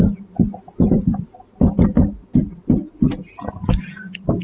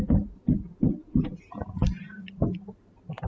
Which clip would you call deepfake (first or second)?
second